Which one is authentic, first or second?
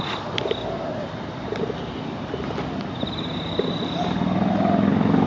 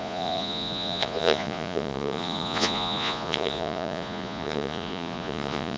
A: first